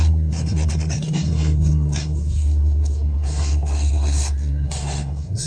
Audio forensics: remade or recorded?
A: remade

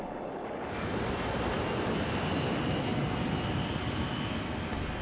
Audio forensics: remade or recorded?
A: recorded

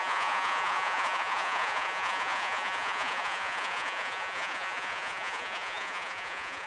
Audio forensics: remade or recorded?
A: remade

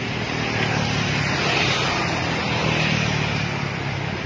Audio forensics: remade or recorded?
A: recorded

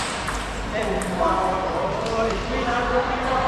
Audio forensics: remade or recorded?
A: recorded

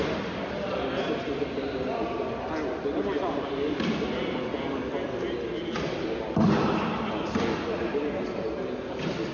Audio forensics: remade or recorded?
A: recorded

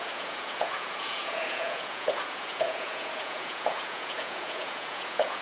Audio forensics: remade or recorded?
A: remade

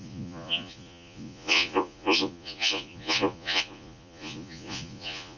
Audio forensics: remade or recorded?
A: remade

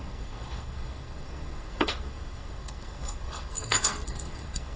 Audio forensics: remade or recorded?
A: remade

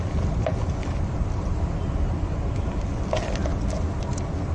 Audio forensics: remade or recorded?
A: recorded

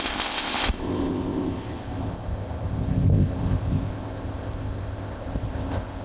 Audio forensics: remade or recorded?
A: remade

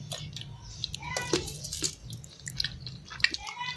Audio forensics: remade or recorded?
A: recorded